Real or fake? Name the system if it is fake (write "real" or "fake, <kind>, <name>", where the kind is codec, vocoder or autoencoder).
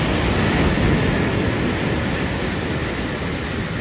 real